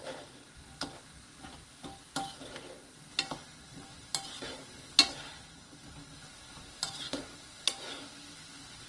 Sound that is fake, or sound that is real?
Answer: real